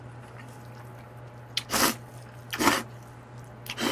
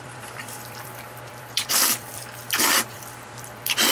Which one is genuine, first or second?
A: first